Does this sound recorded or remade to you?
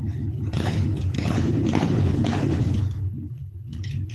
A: remade